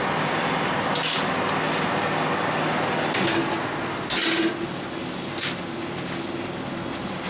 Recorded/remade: recorded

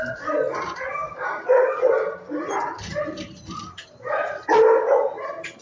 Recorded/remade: remade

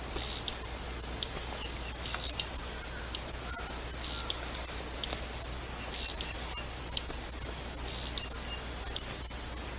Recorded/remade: recorded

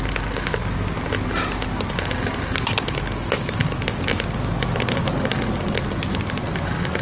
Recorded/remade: recorded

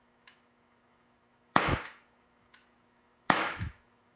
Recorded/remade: remade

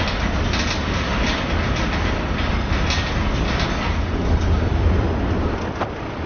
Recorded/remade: recorded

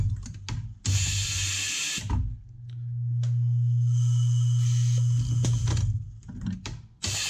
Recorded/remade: recorded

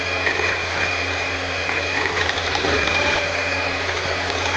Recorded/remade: recorded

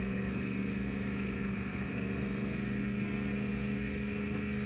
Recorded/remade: remade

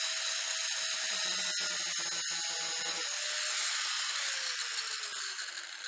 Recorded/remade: recorded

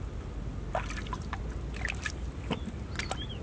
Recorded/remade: recorded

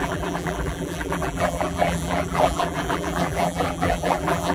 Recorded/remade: remade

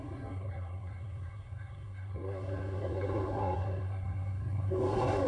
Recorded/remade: remade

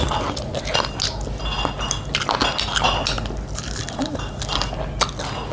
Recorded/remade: recorded